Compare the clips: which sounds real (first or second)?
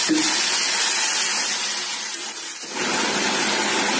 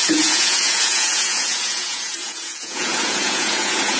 first